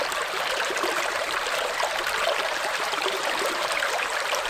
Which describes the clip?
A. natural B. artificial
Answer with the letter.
B